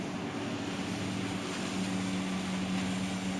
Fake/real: real